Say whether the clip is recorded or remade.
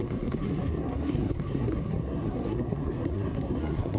remade